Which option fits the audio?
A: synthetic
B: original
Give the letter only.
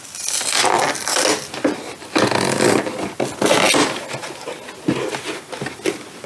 B